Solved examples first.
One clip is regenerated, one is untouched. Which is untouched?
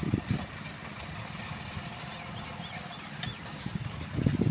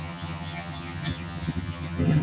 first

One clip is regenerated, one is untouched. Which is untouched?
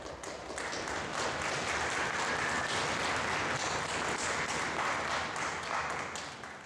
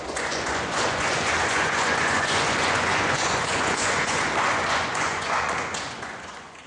first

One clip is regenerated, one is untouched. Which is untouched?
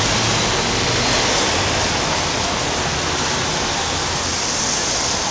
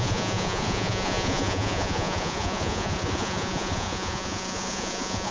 first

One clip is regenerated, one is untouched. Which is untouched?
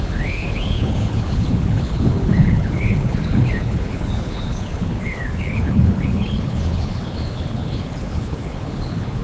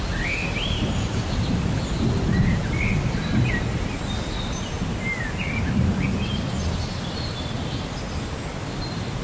second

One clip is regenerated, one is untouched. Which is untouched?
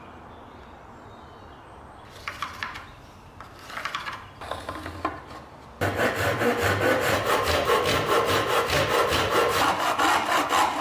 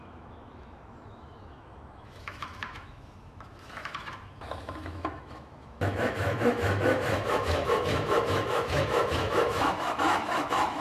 first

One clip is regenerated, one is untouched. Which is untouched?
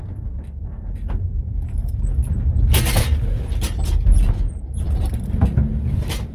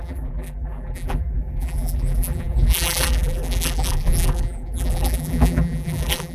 first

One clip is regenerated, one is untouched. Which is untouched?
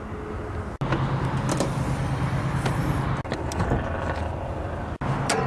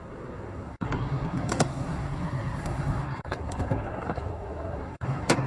first